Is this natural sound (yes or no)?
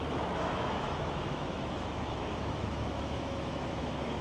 no